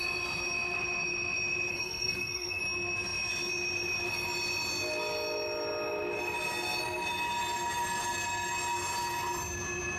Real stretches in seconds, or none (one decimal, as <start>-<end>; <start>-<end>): 0.0-1.7; 2.6-10.0